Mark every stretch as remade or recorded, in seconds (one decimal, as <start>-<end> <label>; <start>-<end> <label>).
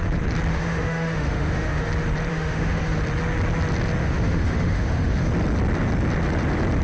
0.0-0.5 recorded; 0.5-1.9 remade; 1.9-2.3 recorded; 2.3-3.0 remade; 3.0-4.0 recorded; 4.0-5.3 remade; 5.3-6.8 recorded